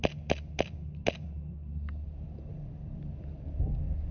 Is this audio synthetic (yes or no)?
no